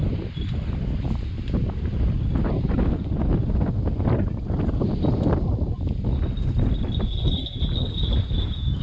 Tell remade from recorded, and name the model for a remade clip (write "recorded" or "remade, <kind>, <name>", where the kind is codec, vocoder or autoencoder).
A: recorded